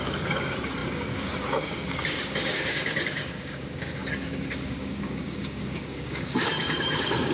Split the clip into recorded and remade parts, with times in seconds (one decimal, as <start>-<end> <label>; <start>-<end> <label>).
0.0-7.3 remade